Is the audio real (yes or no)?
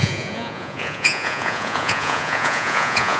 no